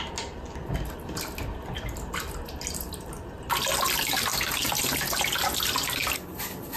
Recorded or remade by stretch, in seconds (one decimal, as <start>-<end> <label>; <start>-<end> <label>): 0.0-6.8 recorded